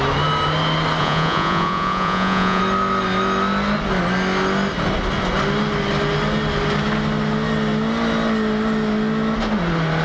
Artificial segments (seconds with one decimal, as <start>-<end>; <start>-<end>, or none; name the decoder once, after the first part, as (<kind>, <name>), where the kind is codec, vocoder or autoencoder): 1.0-2.6 (vocoder, Vocos)